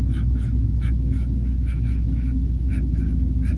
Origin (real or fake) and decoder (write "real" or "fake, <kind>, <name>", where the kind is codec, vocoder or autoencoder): fake, autoencoder, DAC-VAE